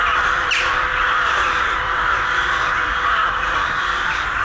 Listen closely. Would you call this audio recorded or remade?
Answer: remade